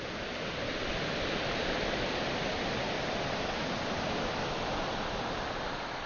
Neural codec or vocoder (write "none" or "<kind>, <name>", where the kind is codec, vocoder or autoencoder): vocoder, BigVGAN v2